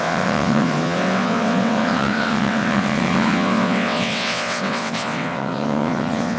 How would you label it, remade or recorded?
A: remade